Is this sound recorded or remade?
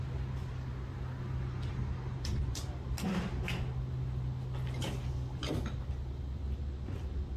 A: recorded